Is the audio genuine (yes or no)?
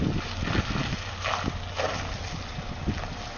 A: yes